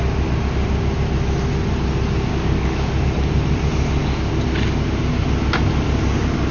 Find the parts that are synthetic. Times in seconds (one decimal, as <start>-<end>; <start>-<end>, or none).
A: 2.3-3.0